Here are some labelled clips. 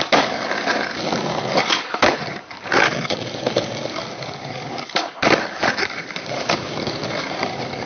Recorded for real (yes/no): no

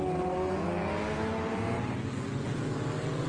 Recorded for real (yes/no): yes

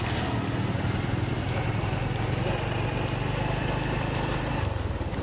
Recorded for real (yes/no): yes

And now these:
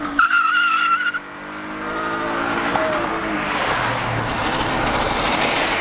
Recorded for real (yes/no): yes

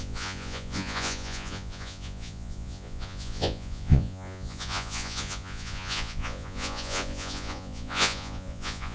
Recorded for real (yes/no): no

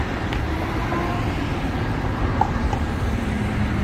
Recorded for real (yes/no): yes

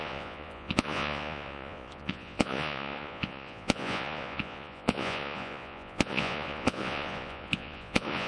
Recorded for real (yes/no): no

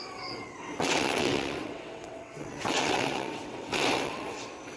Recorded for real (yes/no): no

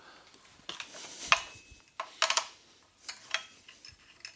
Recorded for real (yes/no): yes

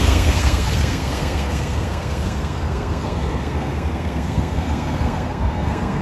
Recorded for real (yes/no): no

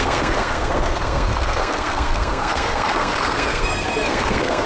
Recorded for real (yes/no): no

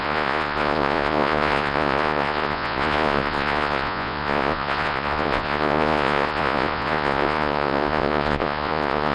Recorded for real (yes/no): no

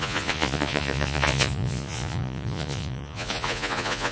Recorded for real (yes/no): no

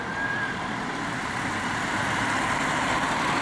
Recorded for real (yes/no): yes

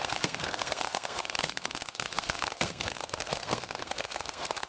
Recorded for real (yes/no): no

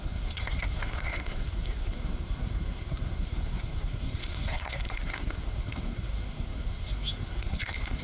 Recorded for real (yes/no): no